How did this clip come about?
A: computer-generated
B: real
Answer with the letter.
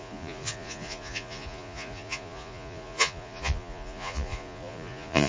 A